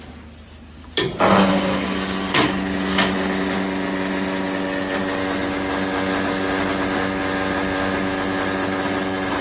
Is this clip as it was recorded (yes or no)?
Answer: yes